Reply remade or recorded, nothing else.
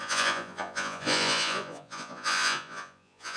remade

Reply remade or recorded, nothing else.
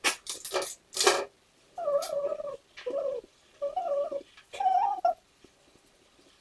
recorded